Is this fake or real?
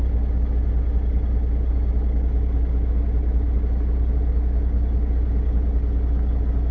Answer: real